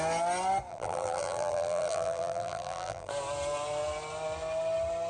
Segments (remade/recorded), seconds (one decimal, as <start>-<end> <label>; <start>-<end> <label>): 0.0-0.7 recorded; 0.7-3.1 remade; 3.1-5.1 recorded